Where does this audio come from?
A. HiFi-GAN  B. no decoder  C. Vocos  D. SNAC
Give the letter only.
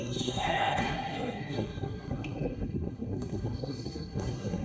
D